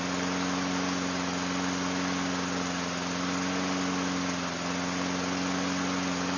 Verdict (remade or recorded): recorded